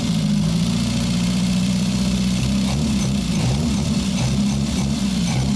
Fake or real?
fake